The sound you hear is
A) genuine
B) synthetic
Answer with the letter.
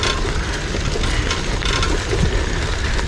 A